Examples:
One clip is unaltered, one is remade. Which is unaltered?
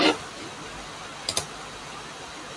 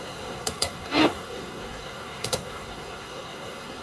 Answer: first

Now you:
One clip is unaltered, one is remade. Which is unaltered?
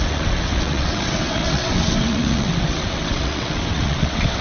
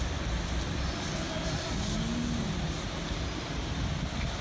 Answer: second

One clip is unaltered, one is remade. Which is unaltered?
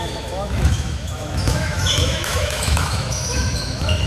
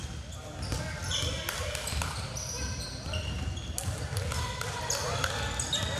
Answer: second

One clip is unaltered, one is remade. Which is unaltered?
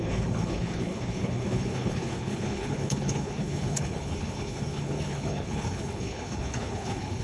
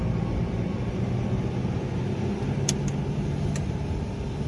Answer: second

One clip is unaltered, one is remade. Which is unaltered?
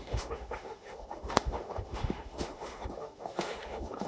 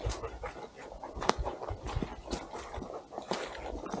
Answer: second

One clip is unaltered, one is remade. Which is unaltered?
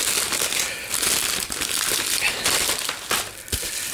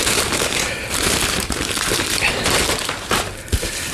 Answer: first